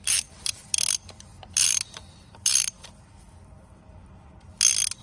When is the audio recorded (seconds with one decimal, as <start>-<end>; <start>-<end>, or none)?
0.7-1.3; 4.3-5.0